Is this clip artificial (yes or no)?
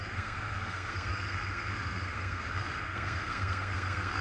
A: yes